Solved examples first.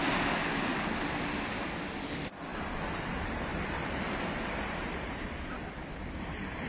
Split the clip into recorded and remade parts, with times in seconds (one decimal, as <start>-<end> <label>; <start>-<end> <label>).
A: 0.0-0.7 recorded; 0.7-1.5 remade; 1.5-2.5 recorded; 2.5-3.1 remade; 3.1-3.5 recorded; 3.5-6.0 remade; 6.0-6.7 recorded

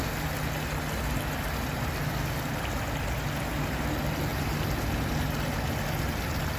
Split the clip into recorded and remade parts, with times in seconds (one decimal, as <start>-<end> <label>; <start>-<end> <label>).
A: 0.0-6.6 recorded

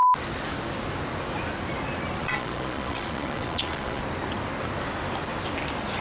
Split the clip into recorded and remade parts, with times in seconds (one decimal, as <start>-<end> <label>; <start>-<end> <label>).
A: 0.0-2.2 recorded; 2.2-4.0 remade; 4.0-6.0 recorded

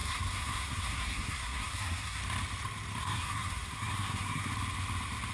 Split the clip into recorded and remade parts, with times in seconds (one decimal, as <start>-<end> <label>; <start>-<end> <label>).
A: 0.0-2.2 remade; 2.2-3.0 recorded; 3.0-4.5 remade; 4.5-5.3 recorded

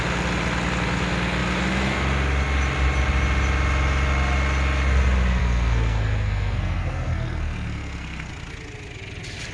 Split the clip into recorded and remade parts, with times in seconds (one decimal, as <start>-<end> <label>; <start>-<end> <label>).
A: 0.0-5.4 recorded; 5.4-8.3 remade; 8.3-9.5 recorded